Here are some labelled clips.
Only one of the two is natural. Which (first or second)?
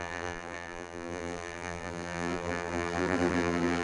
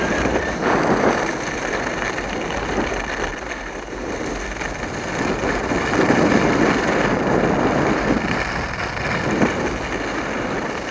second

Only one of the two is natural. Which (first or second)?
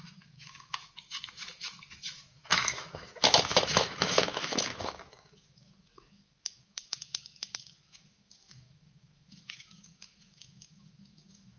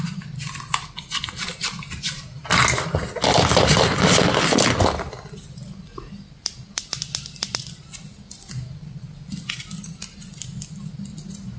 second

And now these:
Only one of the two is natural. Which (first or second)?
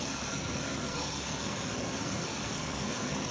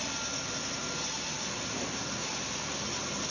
second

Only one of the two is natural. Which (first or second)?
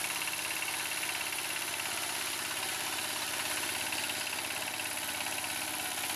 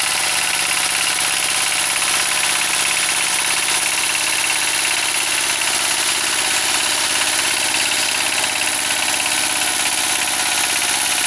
second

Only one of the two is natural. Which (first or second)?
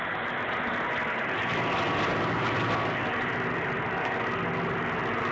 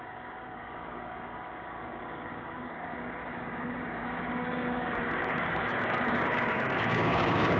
first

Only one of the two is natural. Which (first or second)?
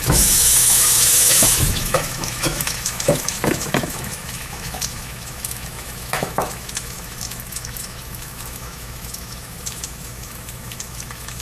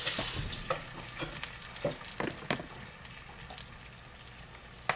second